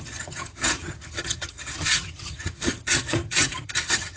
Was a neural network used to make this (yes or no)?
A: yes